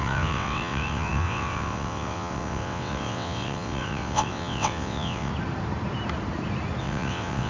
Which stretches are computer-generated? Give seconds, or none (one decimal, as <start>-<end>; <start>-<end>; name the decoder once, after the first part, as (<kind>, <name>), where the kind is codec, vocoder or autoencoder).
0.0-5.3 (vocoder, WaveNeXt); 6.8-7.5